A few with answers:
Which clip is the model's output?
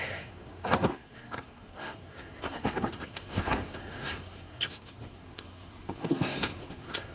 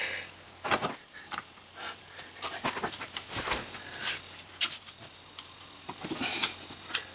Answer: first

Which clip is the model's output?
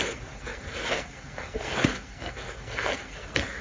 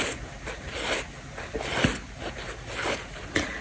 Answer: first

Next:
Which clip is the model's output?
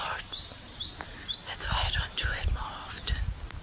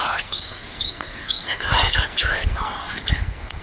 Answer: second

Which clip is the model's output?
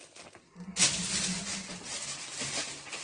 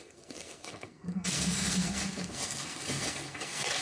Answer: second